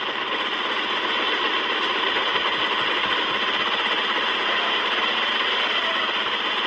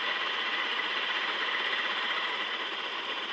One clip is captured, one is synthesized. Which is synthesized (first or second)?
second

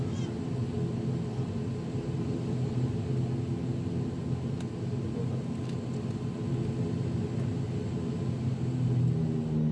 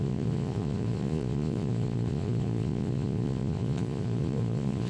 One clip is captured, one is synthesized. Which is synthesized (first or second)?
second